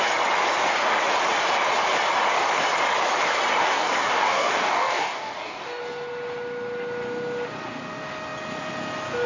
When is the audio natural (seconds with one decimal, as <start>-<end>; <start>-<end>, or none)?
0.0-3.6; 5.8-9.3